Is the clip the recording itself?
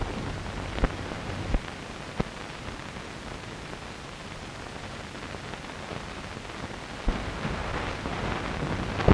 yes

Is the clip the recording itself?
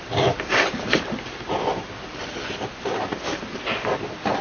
no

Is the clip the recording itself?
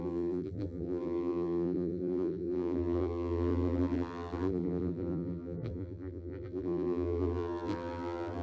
no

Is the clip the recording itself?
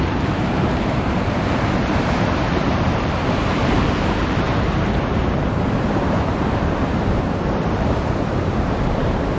no